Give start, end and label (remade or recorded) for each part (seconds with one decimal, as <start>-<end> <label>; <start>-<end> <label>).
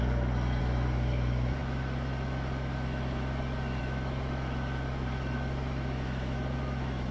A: 0.0-0.6 recorded; 0.6-7.1 remade